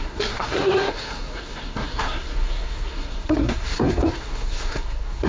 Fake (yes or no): yes